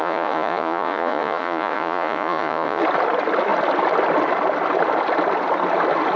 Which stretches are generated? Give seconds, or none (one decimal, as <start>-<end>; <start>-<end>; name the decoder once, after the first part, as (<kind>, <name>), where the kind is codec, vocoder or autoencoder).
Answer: 0.0-2.8 (vocoder, Vocos)